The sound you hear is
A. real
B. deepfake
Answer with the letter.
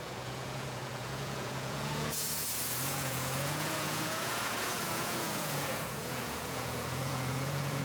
B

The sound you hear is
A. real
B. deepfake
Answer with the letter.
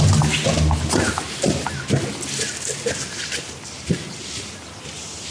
A